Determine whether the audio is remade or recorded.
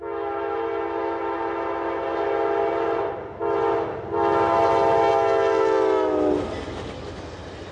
recorded